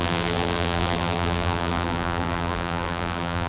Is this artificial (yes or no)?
yes